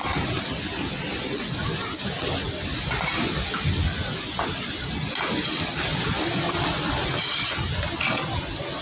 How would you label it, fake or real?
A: real